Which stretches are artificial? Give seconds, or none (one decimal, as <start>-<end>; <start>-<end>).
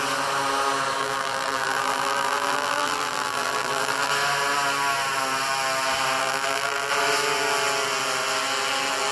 1.0-4.1; 6.2-6.9